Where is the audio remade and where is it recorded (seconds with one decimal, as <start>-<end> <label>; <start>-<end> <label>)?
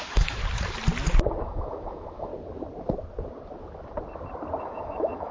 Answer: 0.0-0.4 remade; 0.4-1.4 recorded; 1.4-2.3 remade; 2.3-4.6 recorded; 4.6-5.3 remade